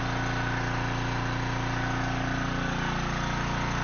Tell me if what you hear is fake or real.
real